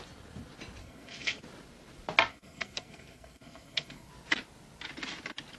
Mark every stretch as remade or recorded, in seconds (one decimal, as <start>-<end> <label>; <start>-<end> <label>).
0.0-0.8 recorded; 0.8-1.4 remade; 1.4-2.3 recorded; 2.3-4.1 remade; 4.1-5.6 recorded